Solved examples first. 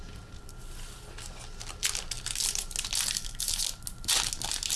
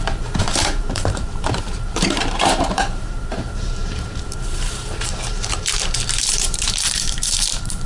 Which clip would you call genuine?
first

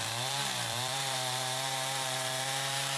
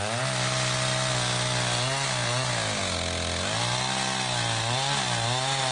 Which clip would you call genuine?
second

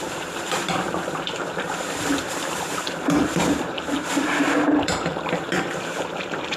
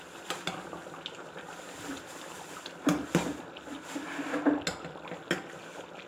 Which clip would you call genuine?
second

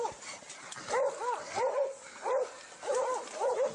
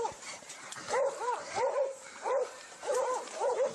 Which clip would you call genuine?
first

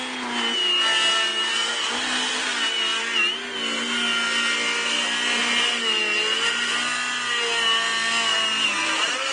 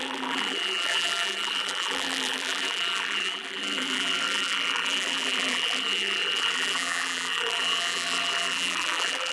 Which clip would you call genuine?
first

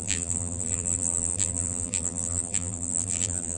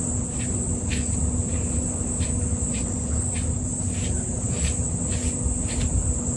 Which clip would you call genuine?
second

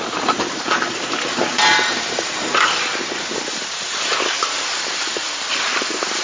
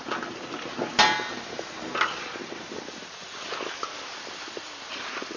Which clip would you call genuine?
second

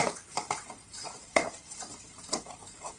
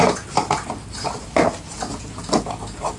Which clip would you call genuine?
second